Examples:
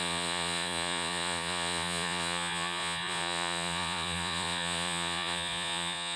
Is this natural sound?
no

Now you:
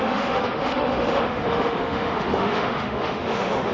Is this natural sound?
no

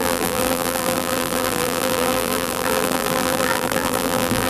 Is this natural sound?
no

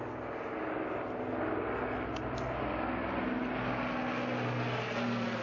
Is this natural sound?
yes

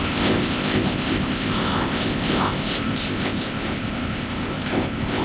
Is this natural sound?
no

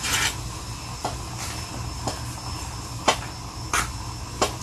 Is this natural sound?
yes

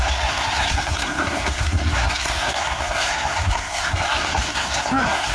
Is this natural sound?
no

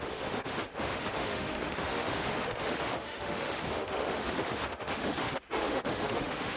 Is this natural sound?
no